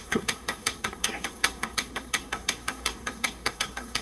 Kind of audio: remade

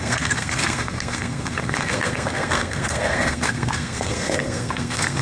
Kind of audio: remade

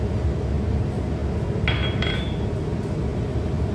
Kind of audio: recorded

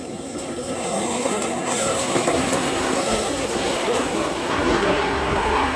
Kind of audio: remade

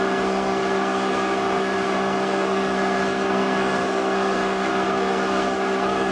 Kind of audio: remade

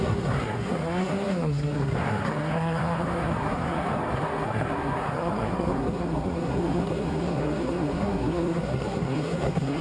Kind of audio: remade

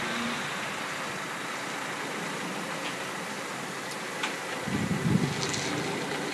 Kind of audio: recorded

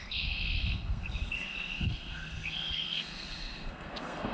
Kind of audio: remade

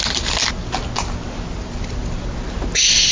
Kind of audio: recorded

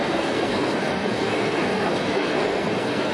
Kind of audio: remade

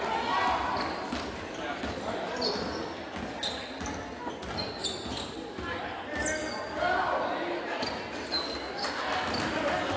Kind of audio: recorded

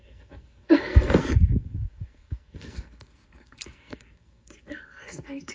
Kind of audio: remade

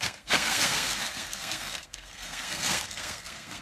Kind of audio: remade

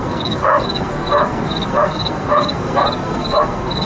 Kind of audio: remade